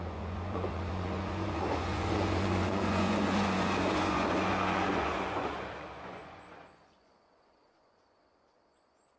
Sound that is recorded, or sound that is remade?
remade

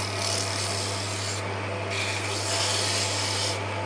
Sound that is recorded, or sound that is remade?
recorded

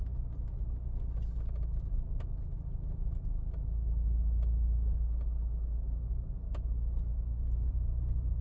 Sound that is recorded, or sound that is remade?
recorded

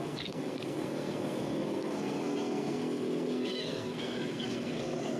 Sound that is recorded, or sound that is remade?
remade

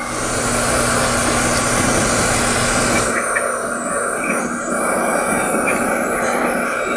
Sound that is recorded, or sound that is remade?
recorded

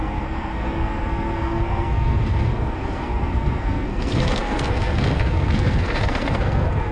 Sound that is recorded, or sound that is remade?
remade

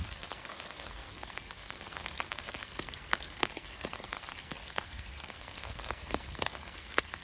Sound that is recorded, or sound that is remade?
remade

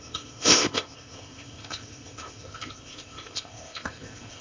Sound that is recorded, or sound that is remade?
remade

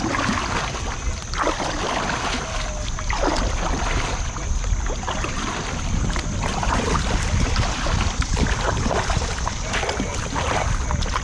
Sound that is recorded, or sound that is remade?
recorded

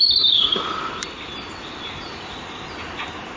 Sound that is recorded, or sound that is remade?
recorded